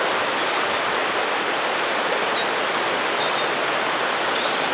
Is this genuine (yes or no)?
yes